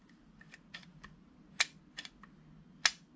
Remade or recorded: recorded